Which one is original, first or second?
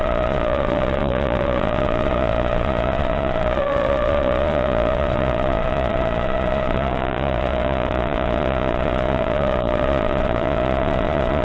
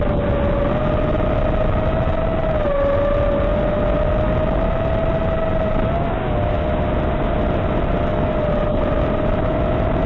second